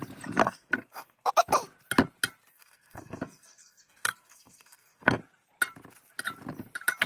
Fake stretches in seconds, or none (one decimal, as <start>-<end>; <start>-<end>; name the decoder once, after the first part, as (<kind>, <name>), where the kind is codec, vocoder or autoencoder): 0.4-1.3 (codec, SNAC); 2.5-5.2

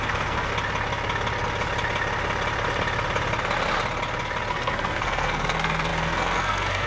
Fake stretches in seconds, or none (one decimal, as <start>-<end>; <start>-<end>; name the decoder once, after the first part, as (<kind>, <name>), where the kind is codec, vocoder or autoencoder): 0.0-0.5 (codec, SNAC); 4.5-6.9

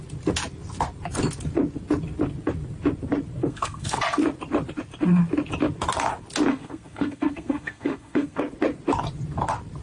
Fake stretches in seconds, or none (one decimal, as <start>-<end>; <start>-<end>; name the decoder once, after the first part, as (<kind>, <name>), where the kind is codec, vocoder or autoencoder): 3.4-4.0 (codec, SNAC); 6.5-8.4

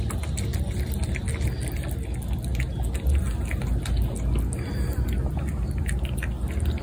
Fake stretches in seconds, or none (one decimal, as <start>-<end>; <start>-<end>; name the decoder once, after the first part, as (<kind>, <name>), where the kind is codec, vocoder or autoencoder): none